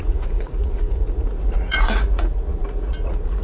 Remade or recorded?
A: remade